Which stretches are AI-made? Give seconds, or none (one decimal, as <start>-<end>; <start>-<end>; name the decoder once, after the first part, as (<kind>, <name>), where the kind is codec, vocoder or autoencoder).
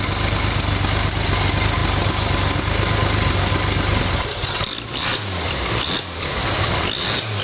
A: none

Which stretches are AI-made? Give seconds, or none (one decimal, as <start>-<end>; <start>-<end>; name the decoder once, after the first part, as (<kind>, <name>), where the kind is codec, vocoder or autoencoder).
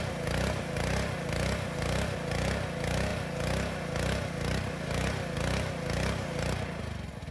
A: none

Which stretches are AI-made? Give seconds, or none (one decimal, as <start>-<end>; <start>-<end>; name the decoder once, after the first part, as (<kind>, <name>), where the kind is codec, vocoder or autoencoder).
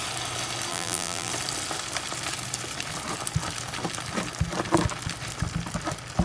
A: 0.7-1.3 (vocoder, BigVGAN v2)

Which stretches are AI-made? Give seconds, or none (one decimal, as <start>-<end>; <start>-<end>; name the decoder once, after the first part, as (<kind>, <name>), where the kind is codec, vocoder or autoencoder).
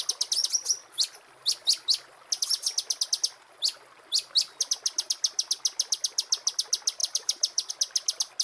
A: 7.0-7.7 (vocoder, BigVGAN v2)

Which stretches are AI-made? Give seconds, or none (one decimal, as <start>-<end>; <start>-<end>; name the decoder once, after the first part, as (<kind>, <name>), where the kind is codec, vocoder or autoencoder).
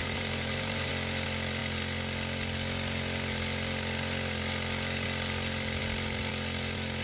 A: 0.0-0.9 (vocoder, BigVGAN v2)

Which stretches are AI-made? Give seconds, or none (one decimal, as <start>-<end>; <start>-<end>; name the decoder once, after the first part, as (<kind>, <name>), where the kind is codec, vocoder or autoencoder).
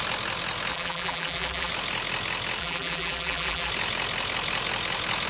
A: 0.7-1.7 (vocoder, BigVGAN v2); 2.6-3.7